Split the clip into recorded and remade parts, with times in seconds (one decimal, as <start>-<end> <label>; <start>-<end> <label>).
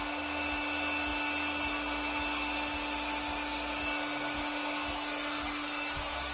0.0-6.3 recorded